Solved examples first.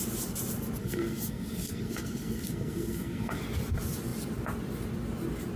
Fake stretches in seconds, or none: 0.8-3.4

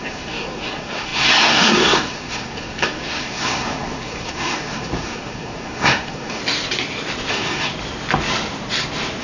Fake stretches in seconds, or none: 0.0-6.4; 7.3-7.7

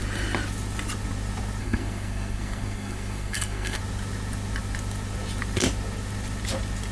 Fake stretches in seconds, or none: 1.6-3.8

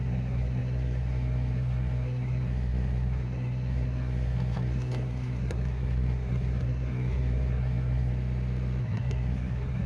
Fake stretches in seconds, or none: 0.0-8.1; 8.8-9.9

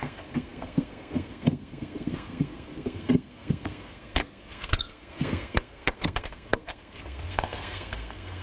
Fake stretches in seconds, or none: 0.0-8.4

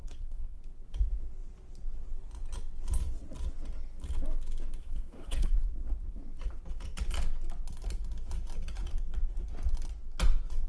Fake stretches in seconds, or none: 0.0-0.6; 4.8-5.5

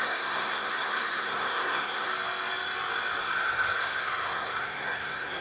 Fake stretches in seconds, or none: 0.0-2.1; 3.2-5.4